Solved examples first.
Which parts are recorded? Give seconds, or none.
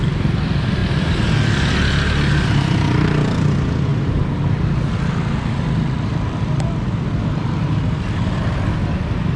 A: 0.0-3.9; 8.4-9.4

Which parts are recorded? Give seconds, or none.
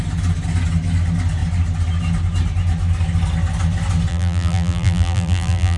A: 0.0-4.1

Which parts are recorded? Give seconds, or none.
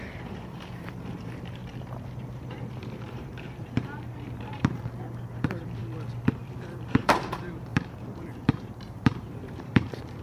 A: 1.6-2.3; 5.8-6.4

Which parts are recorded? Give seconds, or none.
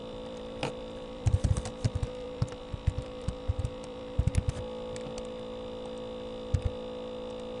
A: 4.3-7.6